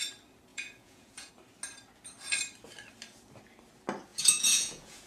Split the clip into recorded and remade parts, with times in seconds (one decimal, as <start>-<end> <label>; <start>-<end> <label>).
0.0-0.5 recorded; 0.5-1.3 remade; 1.3-4.1 recorded; 4.1-5.1 remade